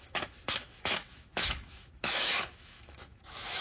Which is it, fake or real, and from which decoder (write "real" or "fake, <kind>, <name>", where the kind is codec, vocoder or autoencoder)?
fake, autoencoder, DAC-VAE